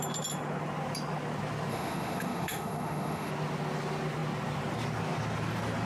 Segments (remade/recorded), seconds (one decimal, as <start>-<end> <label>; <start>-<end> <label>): 0.0-1.7 recorded; 1.7-3.3 remade; 3.3-5.9 recorded